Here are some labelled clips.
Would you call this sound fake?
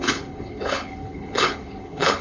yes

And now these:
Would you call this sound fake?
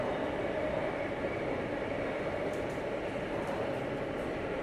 yes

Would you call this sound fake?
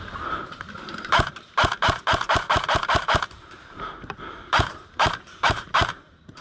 yes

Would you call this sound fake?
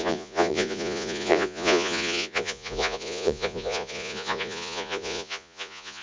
yes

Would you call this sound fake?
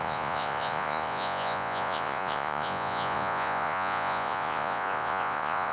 yes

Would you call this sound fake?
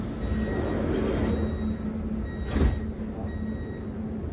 no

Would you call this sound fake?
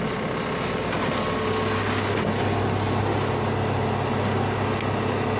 no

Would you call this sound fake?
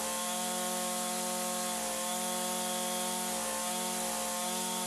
no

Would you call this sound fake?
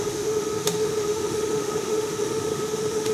yes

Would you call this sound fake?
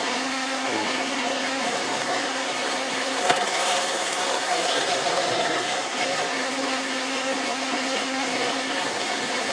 yes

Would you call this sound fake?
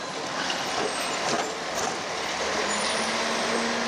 no